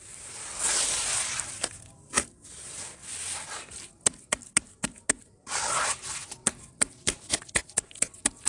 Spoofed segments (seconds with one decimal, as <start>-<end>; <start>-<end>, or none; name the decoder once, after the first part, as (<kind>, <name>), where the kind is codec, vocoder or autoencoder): none

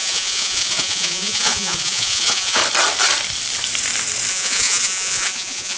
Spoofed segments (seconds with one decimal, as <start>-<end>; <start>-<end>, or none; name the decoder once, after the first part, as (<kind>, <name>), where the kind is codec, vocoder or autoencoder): 0.0-2.6 (vocoder, Vocos); 4.3-5.8

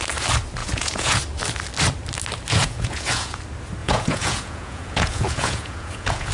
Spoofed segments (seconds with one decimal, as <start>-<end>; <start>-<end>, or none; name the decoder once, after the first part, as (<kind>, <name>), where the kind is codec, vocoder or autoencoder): 0.6-1.2 (vocoder, Vocos); 2.6-3.4; 3.8-6.3

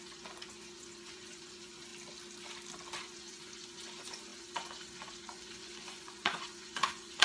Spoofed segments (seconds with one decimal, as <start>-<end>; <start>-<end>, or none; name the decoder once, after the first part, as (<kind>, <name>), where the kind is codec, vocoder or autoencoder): 0.0-1.9 (vocoder, Vocos); 3.0-7.2

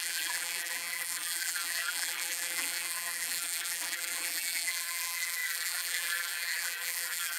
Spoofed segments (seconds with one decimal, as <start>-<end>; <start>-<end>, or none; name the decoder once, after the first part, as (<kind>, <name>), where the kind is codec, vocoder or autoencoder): 0.0-7.4 (vocoder, BigVGAN v2)

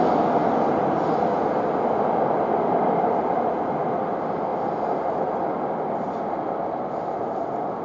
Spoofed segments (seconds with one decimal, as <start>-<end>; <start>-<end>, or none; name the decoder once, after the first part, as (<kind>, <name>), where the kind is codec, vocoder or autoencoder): none

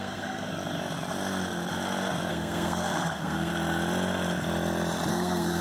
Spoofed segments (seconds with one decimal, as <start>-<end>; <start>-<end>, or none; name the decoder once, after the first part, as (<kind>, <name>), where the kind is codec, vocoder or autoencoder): 0.0-0.5 (codec, SNAC); 2.3-3.5; 5.1-5.6

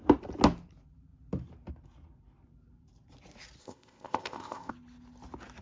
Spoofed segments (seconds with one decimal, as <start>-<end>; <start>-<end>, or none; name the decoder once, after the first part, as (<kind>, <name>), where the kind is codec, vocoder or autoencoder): 3.6-4.7 (codec, ZipCodec)